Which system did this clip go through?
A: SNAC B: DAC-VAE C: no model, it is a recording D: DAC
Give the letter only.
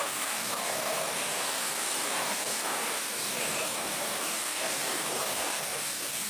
D